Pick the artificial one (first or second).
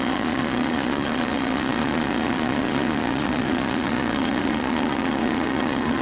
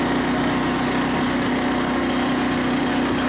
first